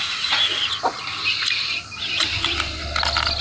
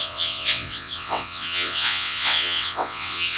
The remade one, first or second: second